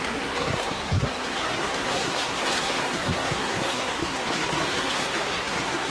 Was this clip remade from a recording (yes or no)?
yes